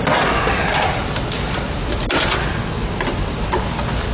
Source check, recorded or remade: recorded